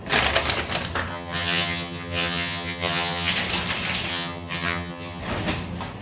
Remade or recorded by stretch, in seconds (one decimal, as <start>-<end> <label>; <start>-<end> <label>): 0.0-1.1 recorded; 1.1-3.3 remade; 3.3-4.1 recorded; 4.1-5.2 remade; 5.2-6.0 recorded